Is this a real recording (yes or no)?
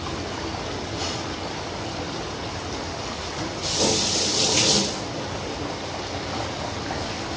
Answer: yes